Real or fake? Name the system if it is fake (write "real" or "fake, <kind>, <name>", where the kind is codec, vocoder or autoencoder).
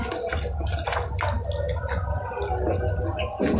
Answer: real